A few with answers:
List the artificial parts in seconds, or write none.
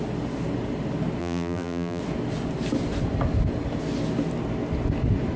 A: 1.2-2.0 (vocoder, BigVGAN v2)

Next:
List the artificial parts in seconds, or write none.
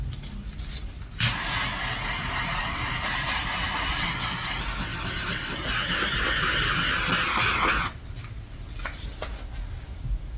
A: 2.6-3.4 (vocoder, BigVGAN v2); 4.9-5.5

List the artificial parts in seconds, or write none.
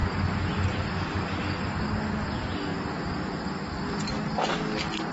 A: 2.7-3.3 (vocoder, BigVGAN v2)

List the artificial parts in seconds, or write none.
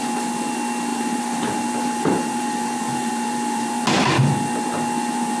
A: 0.9-3.7 (vocoder, BigVGAN v2)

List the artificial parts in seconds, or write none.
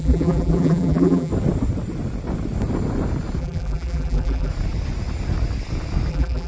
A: 0.0-1.3 (vocoder, BigVGAN v2); 3.4-4.5; 6.1-6.5